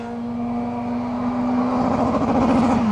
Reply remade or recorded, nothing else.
recorded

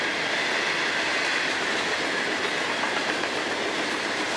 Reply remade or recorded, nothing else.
recorded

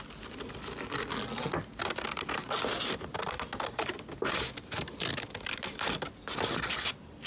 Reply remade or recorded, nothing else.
recorded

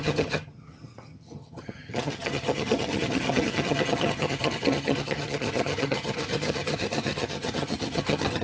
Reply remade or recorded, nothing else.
remade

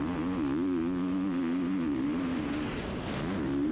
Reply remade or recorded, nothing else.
recorded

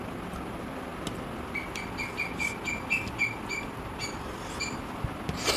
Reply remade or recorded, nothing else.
recorded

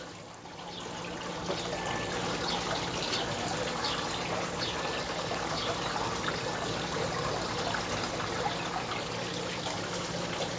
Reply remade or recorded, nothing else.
recorded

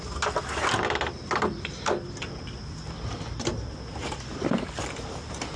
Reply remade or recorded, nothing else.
recorded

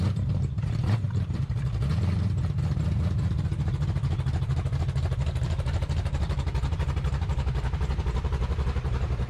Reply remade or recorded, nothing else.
remade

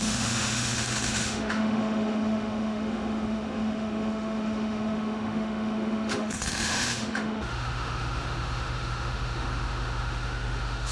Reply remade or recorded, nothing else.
remade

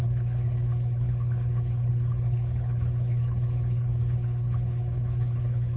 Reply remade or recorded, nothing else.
remade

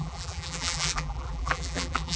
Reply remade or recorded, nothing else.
remade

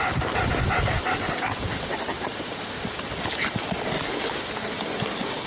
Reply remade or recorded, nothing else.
recorded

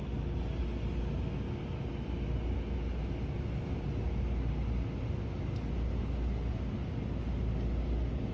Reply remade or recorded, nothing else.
recorded